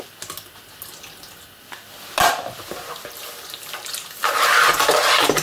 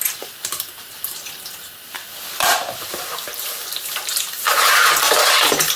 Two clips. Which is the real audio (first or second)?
first